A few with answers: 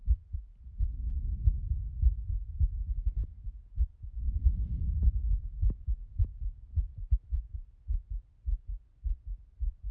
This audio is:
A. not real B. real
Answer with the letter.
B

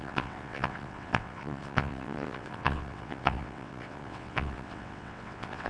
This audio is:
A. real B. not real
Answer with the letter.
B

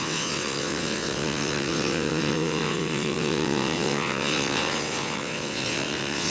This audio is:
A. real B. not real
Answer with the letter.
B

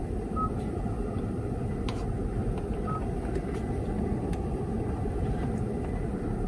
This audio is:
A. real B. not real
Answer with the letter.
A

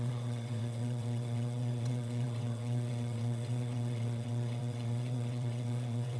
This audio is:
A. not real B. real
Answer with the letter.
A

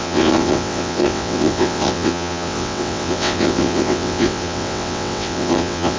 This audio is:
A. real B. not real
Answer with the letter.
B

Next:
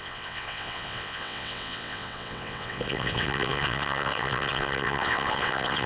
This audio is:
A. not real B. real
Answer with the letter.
A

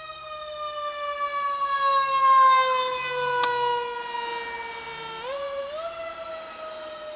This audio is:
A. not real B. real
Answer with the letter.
B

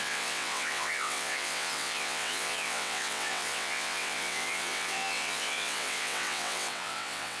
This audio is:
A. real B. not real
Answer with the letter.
B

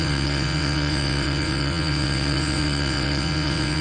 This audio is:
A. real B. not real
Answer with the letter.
B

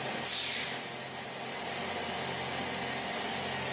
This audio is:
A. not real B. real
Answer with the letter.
B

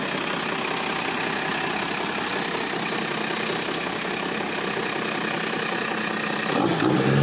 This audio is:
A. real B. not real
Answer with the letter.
A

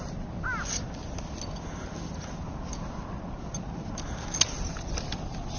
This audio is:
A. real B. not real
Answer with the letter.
A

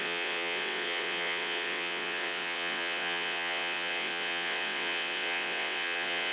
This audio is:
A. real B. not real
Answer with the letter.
B